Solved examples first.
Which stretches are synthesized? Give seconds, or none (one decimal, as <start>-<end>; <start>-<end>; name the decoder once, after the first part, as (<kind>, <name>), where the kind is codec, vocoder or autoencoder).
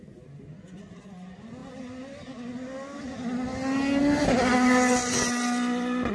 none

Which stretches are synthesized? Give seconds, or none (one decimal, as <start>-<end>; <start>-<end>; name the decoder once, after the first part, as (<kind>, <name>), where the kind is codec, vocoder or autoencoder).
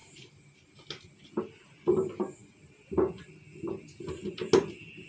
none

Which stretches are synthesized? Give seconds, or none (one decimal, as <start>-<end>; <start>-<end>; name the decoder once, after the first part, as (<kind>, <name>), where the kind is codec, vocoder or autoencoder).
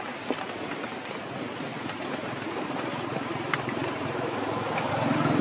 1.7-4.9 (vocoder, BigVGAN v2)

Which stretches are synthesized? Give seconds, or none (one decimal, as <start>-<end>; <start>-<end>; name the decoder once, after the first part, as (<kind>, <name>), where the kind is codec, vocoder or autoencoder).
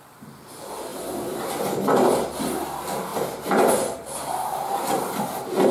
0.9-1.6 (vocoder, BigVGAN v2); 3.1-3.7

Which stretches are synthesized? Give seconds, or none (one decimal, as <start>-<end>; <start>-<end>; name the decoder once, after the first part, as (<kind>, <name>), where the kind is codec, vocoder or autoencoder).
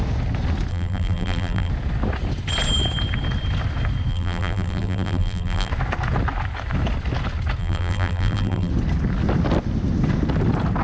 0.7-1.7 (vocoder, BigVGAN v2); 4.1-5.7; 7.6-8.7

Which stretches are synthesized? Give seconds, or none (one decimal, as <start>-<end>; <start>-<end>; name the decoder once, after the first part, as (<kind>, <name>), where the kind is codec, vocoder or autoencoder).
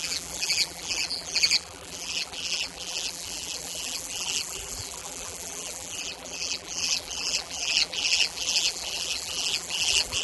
0.0-10.2 (vocoder, BigVGAN v2)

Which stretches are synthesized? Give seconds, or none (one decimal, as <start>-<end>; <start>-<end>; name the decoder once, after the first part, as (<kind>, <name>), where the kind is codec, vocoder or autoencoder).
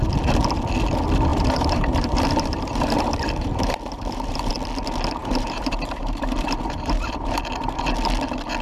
1.3-4.5 (vocoder, BigVGAN v2); 5.2-7.4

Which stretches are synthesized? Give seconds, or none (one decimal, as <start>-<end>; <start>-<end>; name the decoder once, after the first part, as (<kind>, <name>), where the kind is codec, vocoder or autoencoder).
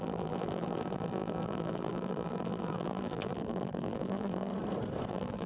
0.0-4.5 (vocoder, BigVGAN v2); 5.1-5.5